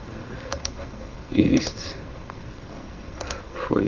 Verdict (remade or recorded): remade